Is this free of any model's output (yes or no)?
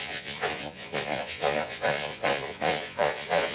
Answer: no